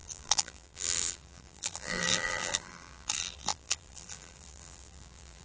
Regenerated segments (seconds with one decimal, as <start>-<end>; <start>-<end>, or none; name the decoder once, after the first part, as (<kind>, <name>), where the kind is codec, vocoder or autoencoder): 0.0-5.4 (vocoder, BigVGAN v2)